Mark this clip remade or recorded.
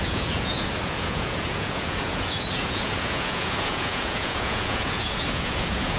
remade